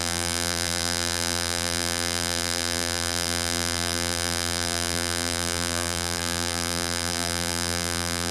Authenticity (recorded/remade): remade